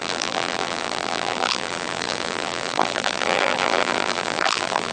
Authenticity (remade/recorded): remade